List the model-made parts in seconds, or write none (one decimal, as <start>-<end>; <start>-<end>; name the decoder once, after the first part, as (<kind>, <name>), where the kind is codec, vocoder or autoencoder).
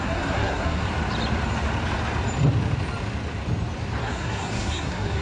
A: 0.0-0.9 (codec, SNAC); 4.0-5.2